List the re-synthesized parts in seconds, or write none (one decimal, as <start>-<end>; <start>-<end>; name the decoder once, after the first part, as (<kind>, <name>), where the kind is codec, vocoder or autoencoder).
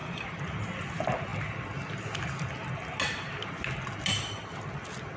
none